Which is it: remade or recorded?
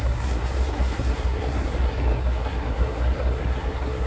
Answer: remade